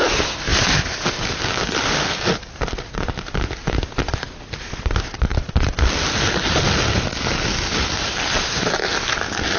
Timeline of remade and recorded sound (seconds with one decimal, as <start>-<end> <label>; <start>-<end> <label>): 0.0-9.6 recorded

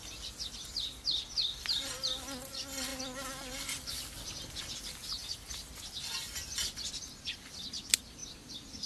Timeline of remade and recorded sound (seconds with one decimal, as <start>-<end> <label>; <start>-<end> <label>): 0.0-8.9 recorded

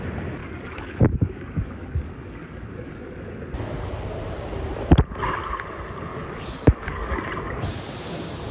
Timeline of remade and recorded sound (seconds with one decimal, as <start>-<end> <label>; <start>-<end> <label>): 0.0-0.4 recorded; 0.4-3.3 remade; 3.3-6.1 recorded; 6.1-7.2 remade; 7.2-8.5 recorded

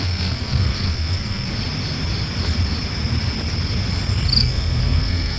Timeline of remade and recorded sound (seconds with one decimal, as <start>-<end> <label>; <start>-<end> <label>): 0.0-1.5 remade; 1.5-4.4 recorded; 4.4-5.4 remade